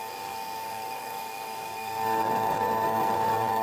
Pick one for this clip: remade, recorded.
remade